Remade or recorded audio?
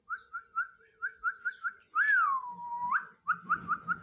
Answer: recorded